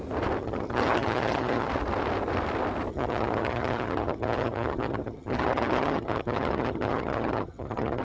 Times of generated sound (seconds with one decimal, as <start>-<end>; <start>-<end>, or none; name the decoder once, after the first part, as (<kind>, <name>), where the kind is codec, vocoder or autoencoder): 0.4-1.7 (vocoder, HiFi-GAN); 2.9-8.0